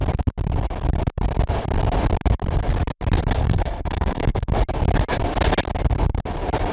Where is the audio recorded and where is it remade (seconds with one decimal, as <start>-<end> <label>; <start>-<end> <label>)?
0.0-3.4 recorded; 3.4-4.5 remade; 4.5-6.7 recorded